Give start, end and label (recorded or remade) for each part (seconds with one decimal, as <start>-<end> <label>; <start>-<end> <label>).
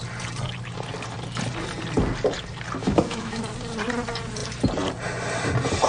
0.0-2.8 recorded; 2.8-3.4 remade; 3.4-5.9 recorded